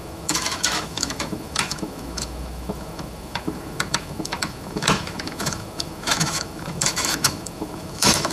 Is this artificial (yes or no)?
yes